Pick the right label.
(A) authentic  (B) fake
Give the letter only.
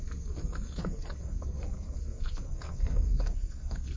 B